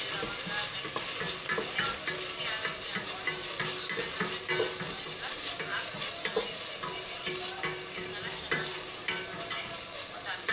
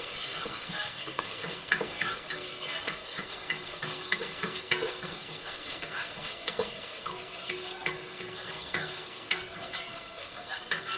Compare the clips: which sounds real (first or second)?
first